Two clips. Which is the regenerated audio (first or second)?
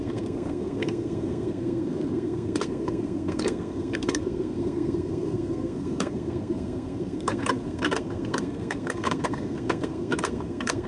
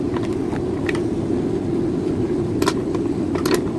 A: first